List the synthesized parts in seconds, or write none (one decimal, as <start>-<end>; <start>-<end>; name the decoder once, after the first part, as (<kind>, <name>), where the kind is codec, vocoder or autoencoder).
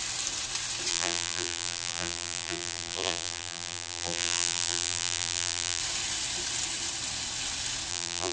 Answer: 0.9-5.8 (vocoder, BigVGAN v2); 7.9-8.3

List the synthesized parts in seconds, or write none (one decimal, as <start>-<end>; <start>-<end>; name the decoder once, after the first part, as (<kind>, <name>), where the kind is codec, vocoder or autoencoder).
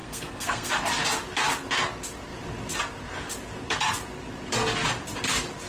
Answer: 0.0-0.7 (codec, SNAC)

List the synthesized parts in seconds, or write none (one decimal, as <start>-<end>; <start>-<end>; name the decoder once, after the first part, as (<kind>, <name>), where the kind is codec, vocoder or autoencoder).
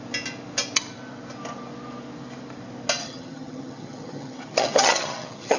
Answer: 3.0-5.6 (vocoder, HiFi-GAN)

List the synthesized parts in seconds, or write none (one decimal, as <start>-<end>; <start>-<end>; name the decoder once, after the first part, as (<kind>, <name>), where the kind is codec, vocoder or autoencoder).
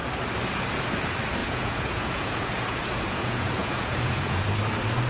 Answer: 1.4-4.5 (vocoder, Vocos)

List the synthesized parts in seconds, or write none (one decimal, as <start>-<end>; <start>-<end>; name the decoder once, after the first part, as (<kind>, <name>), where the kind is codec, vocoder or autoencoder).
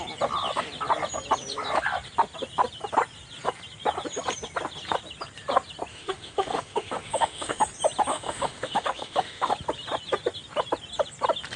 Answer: 5.9-7.6 (autoencoder, DAC-VAE); 8.1-9.5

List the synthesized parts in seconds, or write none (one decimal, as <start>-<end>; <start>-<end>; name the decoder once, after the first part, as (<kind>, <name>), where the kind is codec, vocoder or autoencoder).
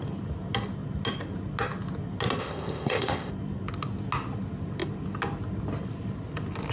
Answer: 2.4-3.3 (codec, ZipCodec)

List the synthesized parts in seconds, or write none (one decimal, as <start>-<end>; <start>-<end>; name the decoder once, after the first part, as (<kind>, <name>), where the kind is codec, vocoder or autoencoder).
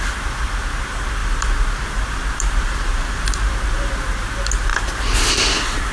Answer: 1.2-3.9 (vocoder, BigVGAN v2); 4.7-5.3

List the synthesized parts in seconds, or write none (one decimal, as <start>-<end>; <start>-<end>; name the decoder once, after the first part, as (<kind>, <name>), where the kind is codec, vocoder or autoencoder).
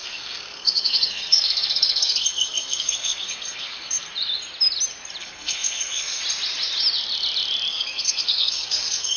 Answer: 0.0-4.1 (codec, SNAC); 5.2-6.2; 7.7-9.2